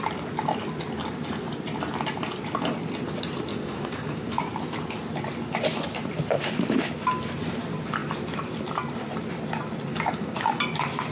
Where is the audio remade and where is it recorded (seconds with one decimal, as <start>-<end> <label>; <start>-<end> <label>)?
0.0-3.5 recorded; 3.5-4.5 remade; 4.5-9.9 recorded; 9.9-10.5 remade; 10.5-11.1 recorded